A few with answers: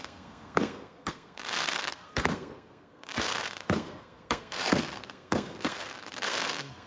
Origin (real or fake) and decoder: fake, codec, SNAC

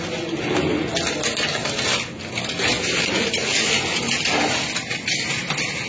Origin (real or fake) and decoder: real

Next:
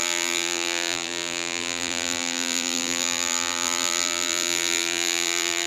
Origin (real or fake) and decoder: fake, vocoder, BigVGAN v2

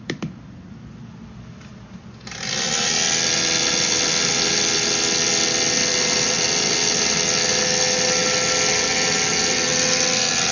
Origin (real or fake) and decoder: real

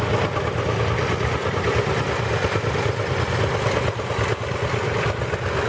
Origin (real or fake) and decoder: real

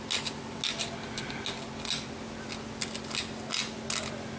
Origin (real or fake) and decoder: real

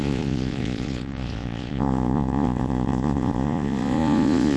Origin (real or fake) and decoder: fake, vocoder, Vocos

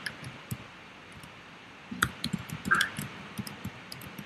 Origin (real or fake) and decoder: fake, vocoder, BigVGAN v2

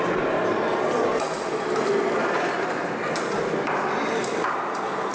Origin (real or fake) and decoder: real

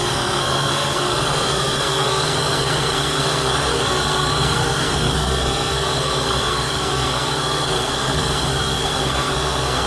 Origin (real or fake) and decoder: fake, codec, SNAC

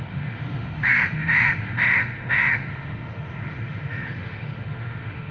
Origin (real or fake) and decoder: fake, autoencoder, DAC-VAE